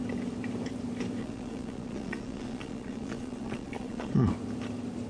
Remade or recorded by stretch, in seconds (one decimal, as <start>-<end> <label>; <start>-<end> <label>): 0.0-1.2 recorded; 1.2-4.3 remade; 4.3-5.1 recorded